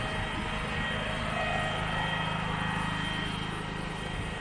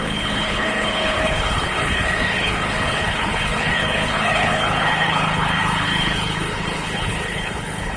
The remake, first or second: second